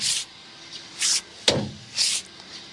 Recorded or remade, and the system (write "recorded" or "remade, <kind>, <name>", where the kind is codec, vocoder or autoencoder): recorded